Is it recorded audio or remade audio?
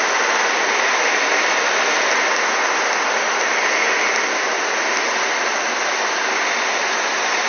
recorded